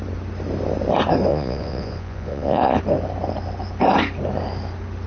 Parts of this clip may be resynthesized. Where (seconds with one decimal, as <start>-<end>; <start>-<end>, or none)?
1.3-2.8

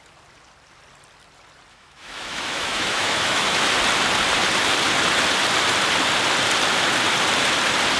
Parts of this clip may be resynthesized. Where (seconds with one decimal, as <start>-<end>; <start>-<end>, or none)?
1.7-3.6

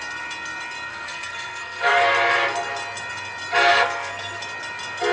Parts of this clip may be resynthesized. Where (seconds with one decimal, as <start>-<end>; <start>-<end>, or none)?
0.9-2.0; 3.7-4.4

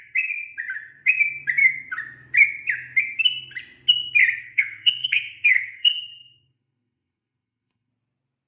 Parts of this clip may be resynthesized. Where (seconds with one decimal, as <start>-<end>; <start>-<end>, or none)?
4.4-7.9

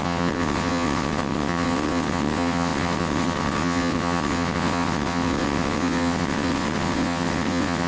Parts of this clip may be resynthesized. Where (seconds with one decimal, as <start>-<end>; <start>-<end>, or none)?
0.0-7.9

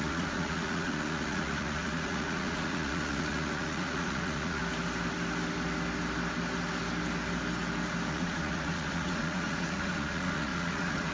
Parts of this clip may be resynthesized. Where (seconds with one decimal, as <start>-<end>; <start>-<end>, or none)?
0.0-4.6; 8.1-11.1